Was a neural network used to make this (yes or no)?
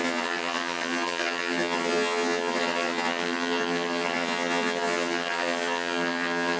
yes